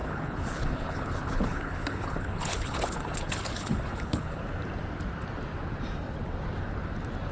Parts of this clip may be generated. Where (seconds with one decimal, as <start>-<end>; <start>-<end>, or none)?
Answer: 0.0-4.4